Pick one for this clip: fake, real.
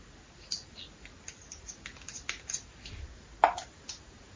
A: real